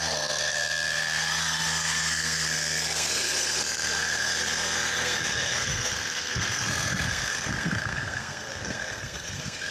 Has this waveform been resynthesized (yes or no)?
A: yes